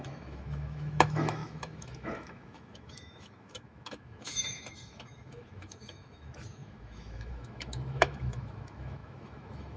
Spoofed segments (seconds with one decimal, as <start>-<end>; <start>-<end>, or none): 0.0-9.8